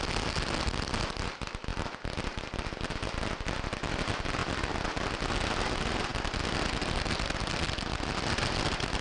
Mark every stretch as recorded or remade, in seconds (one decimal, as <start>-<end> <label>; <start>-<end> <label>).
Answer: 0.0-9.0 recorded

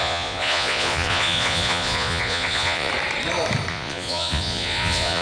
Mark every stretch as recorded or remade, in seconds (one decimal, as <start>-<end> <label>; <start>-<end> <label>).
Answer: 0.0-2.9 remade; 2.9-3.7 recorded; 3.7-5.2 remade

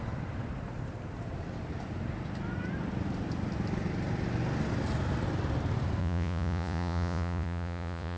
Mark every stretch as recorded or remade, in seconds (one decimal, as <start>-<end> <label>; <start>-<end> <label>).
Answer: 0.0-6.0 recorded; 6.0-8.2 remade

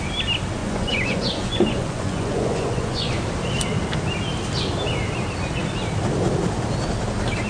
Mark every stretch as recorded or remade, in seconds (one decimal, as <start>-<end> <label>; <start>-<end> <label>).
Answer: 0.0-0.6 recorded; 0.6-3.2 remade; 3.2-7.5 recorded

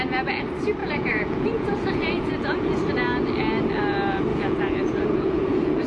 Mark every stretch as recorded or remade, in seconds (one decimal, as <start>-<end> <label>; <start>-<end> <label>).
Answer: 0.0-0.8 recorded; 0.8-2.8 remade; 2.8-4.3 recorded; 4.3-5.9 remade

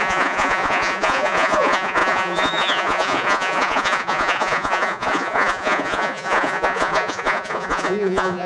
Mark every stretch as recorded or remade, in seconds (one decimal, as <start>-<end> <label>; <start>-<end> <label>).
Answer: 0.0-8.5 remade

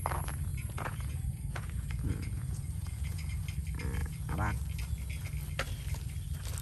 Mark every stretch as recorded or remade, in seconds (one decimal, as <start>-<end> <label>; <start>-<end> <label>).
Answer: 0.0-0.5 recorded; 0.5-3.4 remade; 3.4-4.0 recorded; 4.0-4.6 remade; 4.6-6.6 recorded